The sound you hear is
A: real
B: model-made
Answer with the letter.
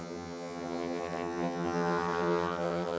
B